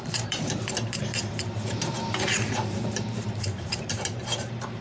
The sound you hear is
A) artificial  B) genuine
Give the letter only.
A